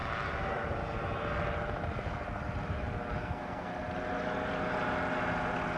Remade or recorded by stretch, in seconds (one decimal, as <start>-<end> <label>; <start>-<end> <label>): 0.0-3.2 recorded; 3.2-3.7 remade; 3.7-5.8 recorded